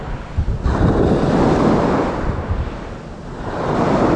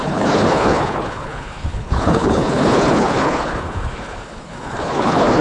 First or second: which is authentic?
first